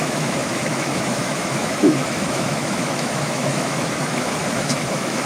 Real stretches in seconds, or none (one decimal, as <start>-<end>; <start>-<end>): none